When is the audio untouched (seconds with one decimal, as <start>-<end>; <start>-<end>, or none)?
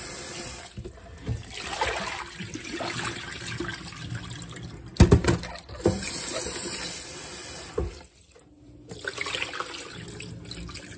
0.0-11.0